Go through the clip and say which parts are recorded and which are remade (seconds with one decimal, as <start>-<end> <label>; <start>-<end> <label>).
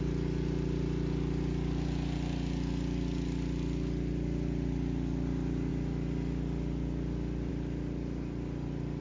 0.0-9.0 recorded